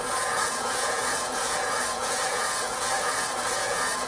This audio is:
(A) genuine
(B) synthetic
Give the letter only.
B